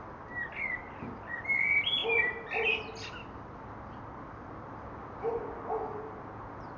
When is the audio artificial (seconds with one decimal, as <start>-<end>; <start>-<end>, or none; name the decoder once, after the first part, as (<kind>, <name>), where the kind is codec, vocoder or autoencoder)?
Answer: none